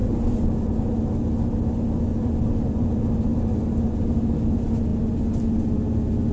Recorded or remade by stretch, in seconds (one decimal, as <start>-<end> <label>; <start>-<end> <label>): 0.0-6.3 recorded